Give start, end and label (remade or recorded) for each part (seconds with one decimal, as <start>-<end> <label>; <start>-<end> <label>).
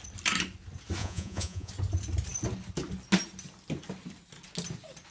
0.0-1.0 recorded; 1.0-1.7 remade; 1.7-5.1 recorded